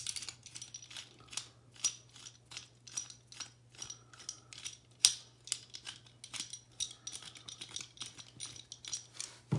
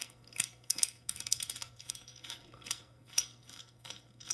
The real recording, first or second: first